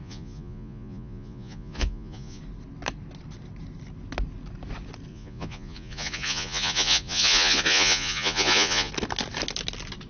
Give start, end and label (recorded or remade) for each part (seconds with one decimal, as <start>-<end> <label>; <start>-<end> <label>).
0.0-2.4 remade; 2.4-5.1 recorded; 5.1-8.9 remade; 8.9-10.1 recorded